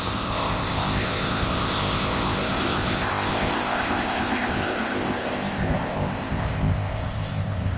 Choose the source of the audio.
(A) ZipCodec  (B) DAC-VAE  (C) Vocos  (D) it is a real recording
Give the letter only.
A